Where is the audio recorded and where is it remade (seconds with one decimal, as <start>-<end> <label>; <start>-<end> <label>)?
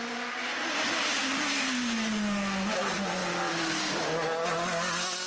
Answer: 0.0-3.2 recorded; 3.2-3.8 remade; 3.8-5.3 recorded